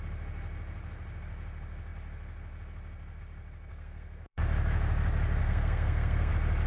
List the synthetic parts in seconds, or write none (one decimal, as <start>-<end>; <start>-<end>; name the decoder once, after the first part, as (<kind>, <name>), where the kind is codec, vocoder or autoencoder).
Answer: 3.7-4.4 (codec, SNAC); 5.4-6.3